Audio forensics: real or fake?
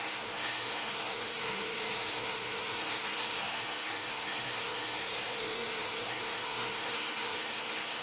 fake